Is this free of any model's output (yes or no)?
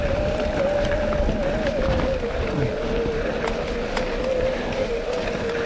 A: yes